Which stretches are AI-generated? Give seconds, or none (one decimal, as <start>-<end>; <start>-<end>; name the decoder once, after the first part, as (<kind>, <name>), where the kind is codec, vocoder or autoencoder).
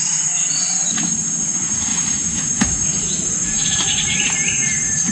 1.9-5.1 (vocoder, BigVGAN v2)